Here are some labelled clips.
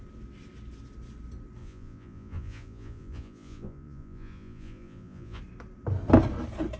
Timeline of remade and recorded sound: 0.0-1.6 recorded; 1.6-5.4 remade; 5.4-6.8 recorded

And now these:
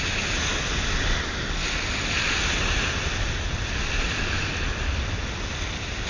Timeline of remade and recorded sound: 0.0-6.1 recorded

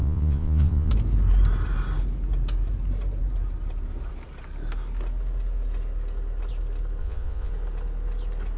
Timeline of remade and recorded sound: 0.0-0.9 remade; 0.9-7.0 recorded; 7.0-7.5 remade; 7.5-8.6 recorded